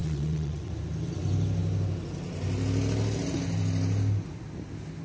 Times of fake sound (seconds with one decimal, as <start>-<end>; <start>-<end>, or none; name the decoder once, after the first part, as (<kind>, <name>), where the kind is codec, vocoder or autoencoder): 0.0-0.7 (vocoder, WaveNeXt)